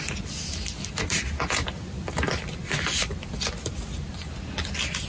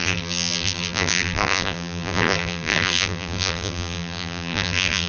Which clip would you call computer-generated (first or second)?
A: second